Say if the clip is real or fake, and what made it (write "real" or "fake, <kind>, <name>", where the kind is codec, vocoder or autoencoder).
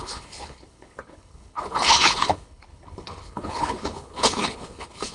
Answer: fake, codec, HILCodec